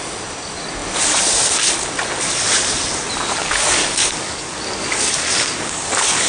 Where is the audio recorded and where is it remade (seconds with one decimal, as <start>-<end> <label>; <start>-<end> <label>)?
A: 0.0-3.4 recorded; 3.4-6.3 remade